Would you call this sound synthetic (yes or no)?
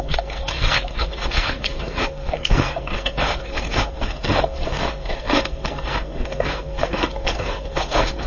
yes